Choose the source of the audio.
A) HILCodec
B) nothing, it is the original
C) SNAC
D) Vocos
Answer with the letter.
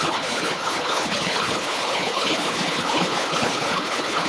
A